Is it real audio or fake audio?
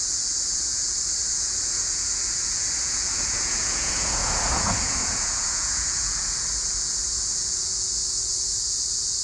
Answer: fake